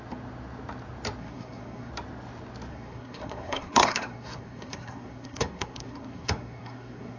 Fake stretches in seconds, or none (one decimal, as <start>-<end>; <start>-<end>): 1.2-1.9; 2.7-7.2